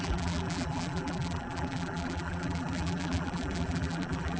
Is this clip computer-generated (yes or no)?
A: yes